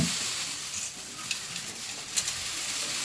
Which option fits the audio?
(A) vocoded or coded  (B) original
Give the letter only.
B